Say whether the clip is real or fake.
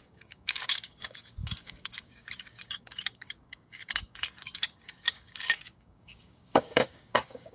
fake